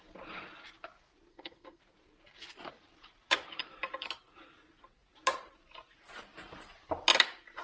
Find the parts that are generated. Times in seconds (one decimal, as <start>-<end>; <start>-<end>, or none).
1.3-1.8